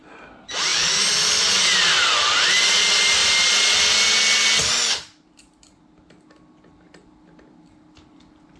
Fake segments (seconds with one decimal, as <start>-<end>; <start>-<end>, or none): none